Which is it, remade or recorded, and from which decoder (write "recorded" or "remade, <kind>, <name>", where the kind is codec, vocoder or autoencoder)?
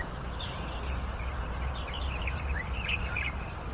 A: remade, vocoder, BigVGAN v2